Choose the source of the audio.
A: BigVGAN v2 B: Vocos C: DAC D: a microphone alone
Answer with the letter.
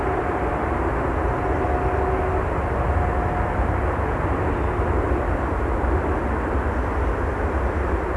D